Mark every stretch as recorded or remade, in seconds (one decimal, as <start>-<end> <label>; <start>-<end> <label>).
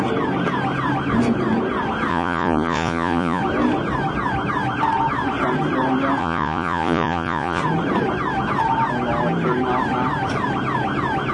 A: 0.0-2.1 recorded; 2.1-3.4 remade; 3.4-6.2 recorded; 6.2-7.6 remade; 7.6-11.3 recorded